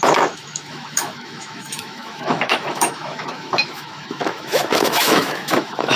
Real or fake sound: fake